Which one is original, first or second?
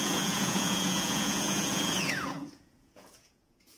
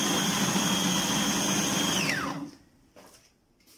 second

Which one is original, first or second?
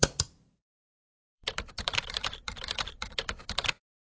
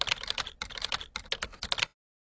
second